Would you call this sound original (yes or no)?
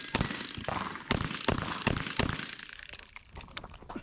yes